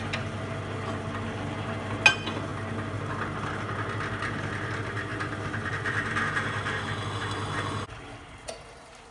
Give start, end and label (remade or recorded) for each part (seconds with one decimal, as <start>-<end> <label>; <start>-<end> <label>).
0.0-5.1 recorded; 5.1-5.7 remade; 5.7-9.1 recorded